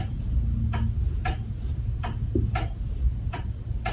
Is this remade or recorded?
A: recorded